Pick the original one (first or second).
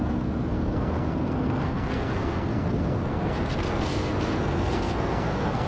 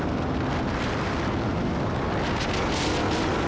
second